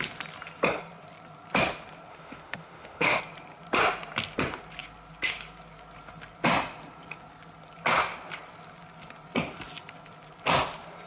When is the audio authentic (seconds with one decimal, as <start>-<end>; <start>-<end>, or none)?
0.0-2.1; 3.2-11.1